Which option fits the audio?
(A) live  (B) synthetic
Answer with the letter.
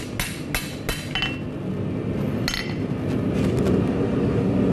A